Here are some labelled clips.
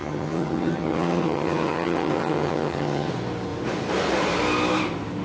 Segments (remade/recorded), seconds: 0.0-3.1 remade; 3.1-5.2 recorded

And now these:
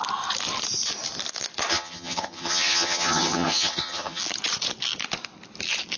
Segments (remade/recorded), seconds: 0.0-1.7 recorded; 1.7-4.2 remade; 4.2-6.0 recorded